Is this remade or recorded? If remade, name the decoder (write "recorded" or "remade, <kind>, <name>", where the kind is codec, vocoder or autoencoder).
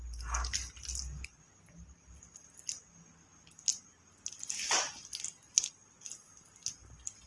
recorded